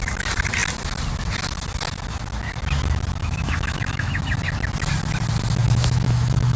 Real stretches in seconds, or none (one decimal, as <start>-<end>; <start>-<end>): 0.0-3.2; 4.2-5.6